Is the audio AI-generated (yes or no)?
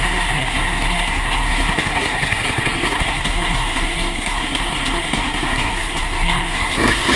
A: yes